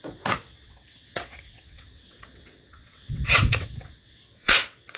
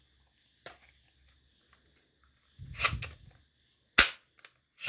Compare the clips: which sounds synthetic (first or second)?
first